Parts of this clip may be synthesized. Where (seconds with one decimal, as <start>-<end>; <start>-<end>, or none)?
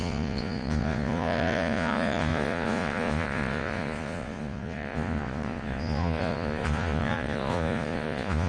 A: 0.0-8.5